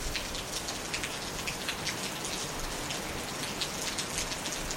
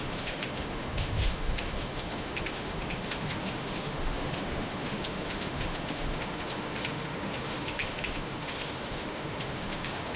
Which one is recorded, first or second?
first